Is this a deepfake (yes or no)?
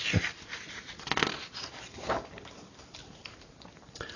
no